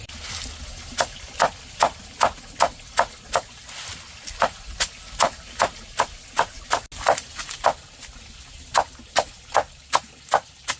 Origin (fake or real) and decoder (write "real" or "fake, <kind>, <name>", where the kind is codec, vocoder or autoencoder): real